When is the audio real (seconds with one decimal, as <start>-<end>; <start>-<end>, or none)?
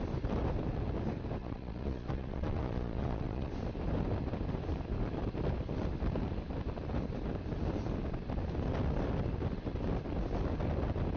0.0-1.4; 3.5-11.2